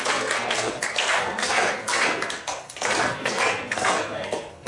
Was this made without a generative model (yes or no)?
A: no